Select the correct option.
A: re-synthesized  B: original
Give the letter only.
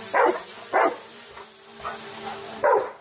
B